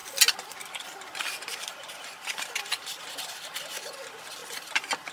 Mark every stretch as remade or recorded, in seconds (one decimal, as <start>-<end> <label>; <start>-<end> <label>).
0.0-4.4 recorded; 4.4-5.1 remade